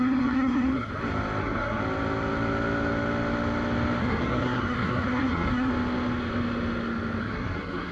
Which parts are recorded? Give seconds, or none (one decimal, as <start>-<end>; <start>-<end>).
0.9-1.4; 1.8-4.0; 5.7-7.2